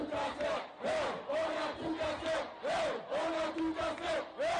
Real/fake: real